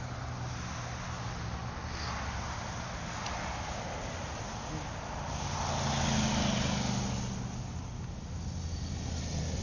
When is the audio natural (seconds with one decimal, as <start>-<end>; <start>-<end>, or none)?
0.0-9.6